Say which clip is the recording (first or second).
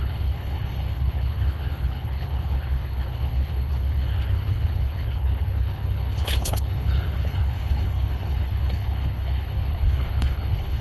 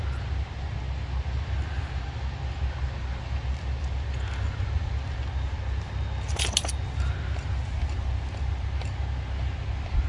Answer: second